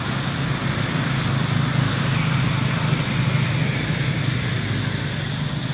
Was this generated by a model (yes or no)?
no